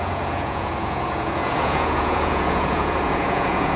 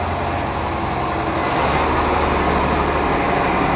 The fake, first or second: first